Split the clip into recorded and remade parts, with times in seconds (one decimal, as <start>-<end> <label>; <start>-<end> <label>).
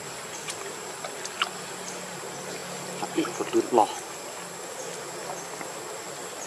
0.0-6.5 recorded